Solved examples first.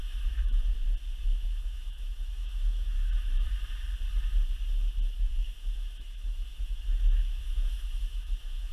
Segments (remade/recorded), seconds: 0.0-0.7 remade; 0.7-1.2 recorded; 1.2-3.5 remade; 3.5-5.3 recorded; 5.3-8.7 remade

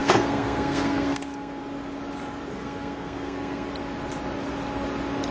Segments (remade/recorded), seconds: 0.0-1.6 remade; 1.6-2.5 recorded; 2.5-3.7 remade; 3.7-5.3 recorded

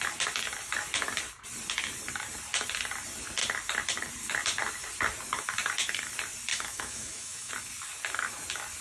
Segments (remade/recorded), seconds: 0.0-6.5 recorded; 6.5-7.5 remade; 7.5-8.8 recorded